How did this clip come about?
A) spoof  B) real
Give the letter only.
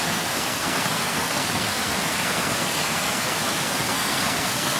A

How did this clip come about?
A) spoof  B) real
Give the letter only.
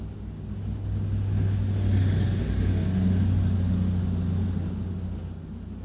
B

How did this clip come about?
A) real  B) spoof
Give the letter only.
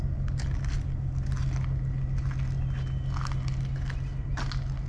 A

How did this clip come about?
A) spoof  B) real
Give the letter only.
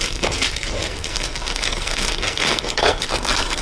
A